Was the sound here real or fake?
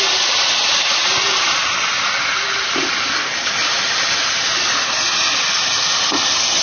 real